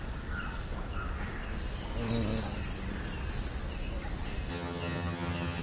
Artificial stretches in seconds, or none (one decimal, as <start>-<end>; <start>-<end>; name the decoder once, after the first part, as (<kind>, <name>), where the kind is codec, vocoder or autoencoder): 4.5-5.6 (vocoder, HiFi-GAN)